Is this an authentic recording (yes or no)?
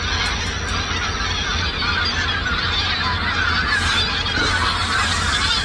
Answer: yes